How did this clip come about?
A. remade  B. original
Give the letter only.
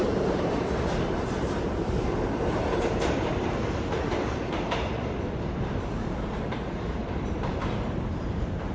A